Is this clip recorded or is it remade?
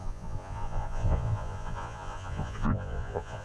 remade